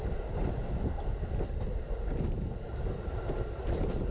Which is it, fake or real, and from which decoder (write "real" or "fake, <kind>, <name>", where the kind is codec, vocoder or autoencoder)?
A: real